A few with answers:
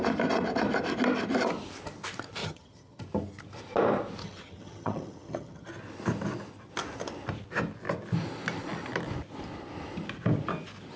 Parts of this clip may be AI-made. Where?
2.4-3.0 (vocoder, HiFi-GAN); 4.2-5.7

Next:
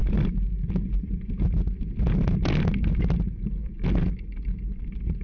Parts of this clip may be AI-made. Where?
none

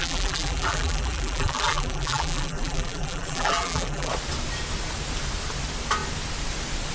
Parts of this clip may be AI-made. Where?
0.0-4.1 (vocoder, BigVGAN v2)

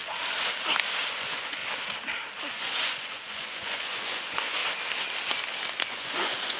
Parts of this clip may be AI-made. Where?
1.2-1.6 (vocoder, Vocos); 2.5-4.6; 5.8-6.6

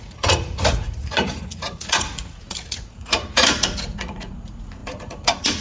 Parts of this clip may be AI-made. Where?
0.0-5.6 (vocoder, Vocos)